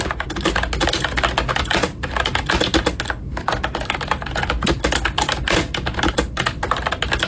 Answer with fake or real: real